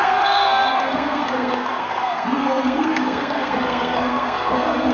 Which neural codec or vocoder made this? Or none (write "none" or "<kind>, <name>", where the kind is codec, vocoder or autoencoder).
codec, SNAC